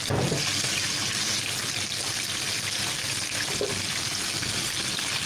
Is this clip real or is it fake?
real